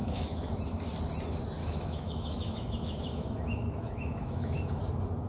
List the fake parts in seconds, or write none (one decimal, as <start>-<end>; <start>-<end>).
0.0-0.6; 1.6-4.8